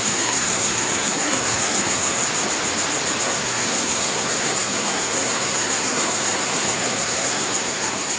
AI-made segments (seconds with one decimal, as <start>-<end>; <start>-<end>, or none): 0.0-2.2; 3.2-8.2

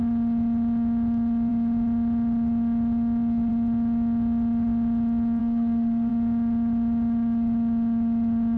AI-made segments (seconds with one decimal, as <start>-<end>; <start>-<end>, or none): 5.4-6.1

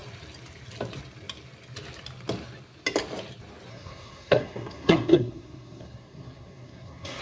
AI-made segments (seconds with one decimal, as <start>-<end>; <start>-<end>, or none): 3.7-7.2

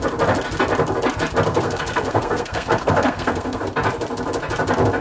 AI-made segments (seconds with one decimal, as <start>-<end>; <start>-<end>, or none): 1.5-3.6

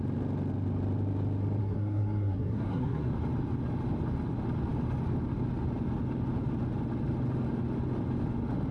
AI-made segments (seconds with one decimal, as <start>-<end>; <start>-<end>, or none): 1.6-3.1

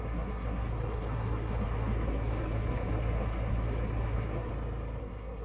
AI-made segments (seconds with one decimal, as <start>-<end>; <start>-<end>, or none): 0.0-4.5; 5.0-5.4

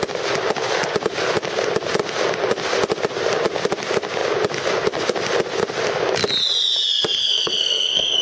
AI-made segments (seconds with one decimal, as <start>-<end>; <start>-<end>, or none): 7.2-8.2

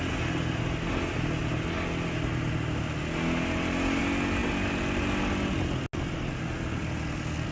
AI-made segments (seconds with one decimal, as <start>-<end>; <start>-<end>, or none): none